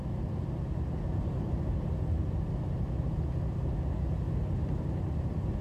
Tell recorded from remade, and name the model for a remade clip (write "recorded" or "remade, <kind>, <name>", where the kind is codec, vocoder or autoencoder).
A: recorded